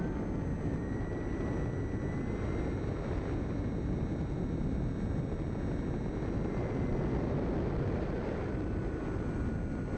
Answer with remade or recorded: recorded